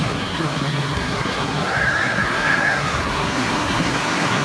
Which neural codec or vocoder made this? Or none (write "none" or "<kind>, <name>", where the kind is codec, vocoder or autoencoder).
codec, SNAC